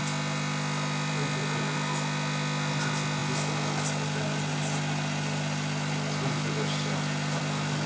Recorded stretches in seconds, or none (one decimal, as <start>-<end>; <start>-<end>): 0.0-7.9